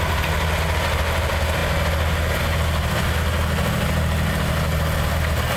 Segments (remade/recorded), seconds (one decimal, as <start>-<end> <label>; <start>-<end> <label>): 0.0-5.6 recorded